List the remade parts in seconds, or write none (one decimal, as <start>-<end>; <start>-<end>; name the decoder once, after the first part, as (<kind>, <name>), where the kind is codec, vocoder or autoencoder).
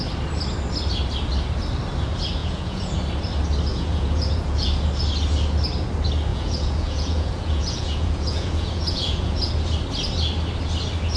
2.4-2.9 (vocoder, Vocos); 3.7-4.7; 6.3-9.5